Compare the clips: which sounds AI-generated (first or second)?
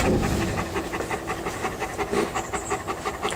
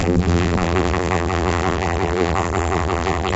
second